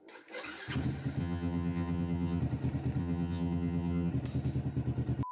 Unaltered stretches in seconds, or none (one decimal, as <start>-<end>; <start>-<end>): 0.0-1.2; 2.4-3.0; 4.1-5.3